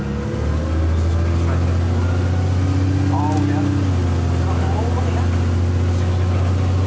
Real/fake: real